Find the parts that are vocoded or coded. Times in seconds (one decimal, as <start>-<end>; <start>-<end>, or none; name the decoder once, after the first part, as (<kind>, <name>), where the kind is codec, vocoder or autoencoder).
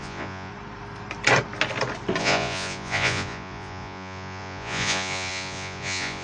0.0-0.5 (vocoder, Vocos); 2.2-6.2